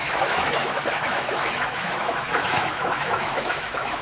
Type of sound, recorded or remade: remade